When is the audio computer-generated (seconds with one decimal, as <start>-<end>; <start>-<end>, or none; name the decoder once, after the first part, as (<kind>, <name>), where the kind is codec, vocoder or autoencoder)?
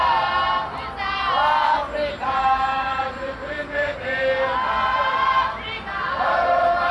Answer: 2.4-3.0 (autoencoder, DAC-VAE)